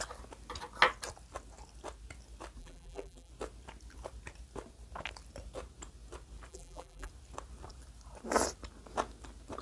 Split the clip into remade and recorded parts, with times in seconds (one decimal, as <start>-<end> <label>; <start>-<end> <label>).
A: 0.0-2.6 recorded; 2.6-3.3 remade; 3.3-6.5 recorded; 6.5-7.1 remade; 7.1-9.6 recorded